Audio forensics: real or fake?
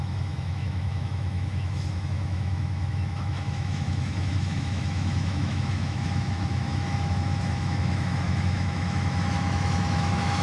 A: fake